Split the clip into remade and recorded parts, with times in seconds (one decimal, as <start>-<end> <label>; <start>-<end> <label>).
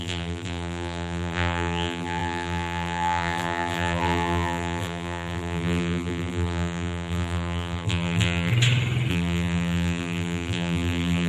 0.0-8.5 remade; 8.5-9.1 recorded; 9.1-11.3 remade